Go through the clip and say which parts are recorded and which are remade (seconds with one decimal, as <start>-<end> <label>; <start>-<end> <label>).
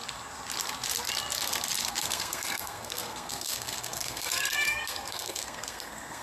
0.0-1.9 recorded; 1.9-6.2 remade